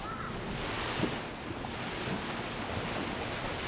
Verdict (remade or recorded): recorded